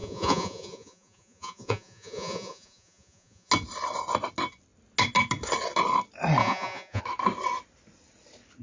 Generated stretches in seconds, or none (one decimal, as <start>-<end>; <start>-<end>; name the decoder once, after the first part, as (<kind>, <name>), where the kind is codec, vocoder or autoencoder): 0.0-3.5 (vocoder, Vocos); 6.4-7.0